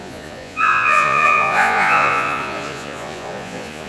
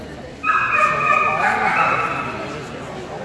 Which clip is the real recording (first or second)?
second